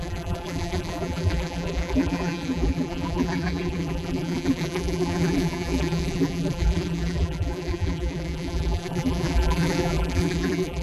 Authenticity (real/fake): fake